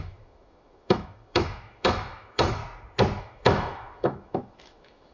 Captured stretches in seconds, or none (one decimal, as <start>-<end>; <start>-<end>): 2.6-3.2